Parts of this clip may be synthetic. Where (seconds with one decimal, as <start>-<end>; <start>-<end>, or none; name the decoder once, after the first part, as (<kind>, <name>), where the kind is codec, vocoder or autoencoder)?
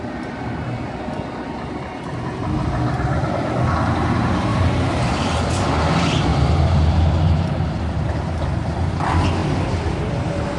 4.5-5.5 (vocoder, BigVGAN v2); 6.3-8.5